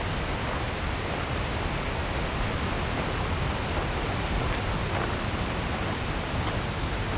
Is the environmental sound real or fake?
real